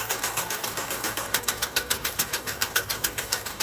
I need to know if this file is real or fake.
fake